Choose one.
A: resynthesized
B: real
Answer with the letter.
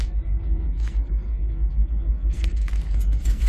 A